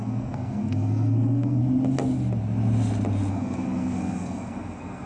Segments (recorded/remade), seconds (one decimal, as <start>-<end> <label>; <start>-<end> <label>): 0.0-1.6 remade; 1.6-3.3 recorded; 3.3-5.1 remade